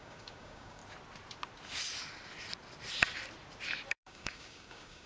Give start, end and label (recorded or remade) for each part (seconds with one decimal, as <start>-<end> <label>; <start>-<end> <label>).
0.0-0.8 remade; 0.8-3.9 recorded; 3.9-5.1 remade